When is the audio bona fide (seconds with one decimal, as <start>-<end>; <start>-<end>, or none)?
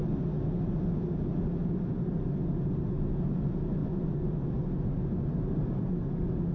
0.0-3.8; 4.3-6.5